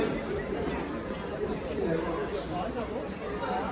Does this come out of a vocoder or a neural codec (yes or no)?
no